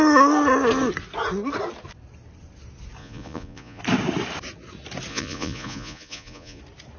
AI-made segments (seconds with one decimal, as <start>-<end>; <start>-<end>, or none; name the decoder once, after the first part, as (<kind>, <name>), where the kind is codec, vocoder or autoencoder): 3.0-3.8 (vocoder, Vocos); 5.1-6.6